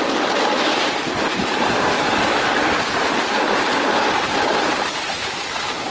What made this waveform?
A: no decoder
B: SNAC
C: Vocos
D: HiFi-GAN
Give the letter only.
A